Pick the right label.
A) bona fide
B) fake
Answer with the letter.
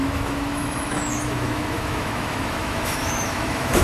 B